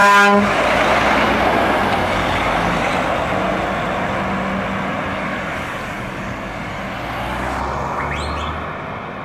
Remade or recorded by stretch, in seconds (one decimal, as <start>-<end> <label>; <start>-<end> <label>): 0.0-0.6 remade; 0.6-2.0 recorded; 2.0-2.9 remade; 2.9-5.1 recorded; 5.1-6.8 remade; 6.8-9.2 recorded